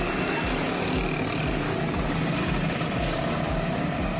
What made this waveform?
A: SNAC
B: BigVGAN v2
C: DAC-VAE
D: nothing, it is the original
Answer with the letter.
D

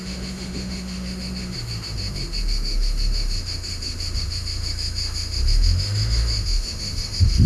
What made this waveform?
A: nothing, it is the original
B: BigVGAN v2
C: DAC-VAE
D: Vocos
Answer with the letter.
C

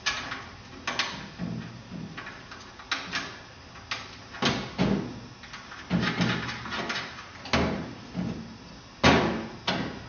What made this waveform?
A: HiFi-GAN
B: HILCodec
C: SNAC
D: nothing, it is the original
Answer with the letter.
D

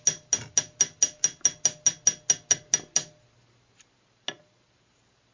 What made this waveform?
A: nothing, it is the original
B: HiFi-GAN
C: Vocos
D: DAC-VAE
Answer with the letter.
A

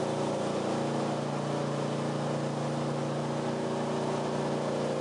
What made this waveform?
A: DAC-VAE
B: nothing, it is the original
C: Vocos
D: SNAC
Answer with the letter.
B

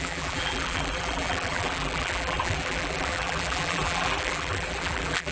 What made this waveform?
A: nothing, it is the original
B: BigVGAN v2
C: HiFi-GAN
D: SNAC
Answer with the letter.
B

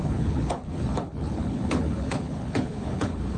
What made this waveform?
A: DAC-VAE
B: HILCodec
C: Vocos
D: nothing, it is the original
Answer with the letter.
B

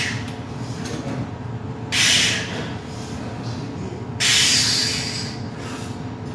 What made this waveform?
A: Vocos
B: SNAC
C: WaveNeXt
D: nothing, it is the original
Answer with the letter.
D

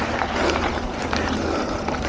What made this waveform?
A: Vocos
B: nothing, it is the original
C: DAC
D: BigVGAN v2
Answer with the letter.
D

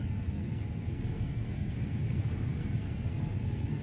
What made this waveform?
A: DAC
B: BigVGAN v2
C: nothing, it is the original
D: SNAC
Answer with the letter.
D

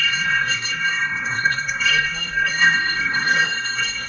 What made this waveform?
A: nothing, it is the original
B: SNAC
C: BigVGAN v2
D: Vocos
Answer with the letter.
B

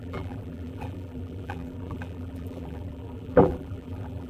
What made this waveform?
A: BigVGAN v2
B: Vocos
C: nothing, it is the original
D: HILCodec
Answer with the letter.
A